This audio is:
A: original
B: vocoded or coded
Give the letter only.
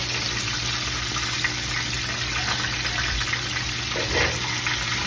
A